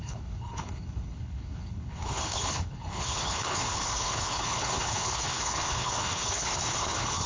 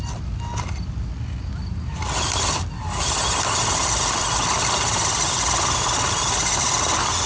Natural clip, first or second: second